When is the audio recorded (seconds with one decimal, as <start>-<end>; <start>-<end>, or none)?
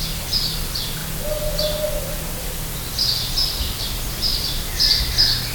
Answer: 0.0-5.5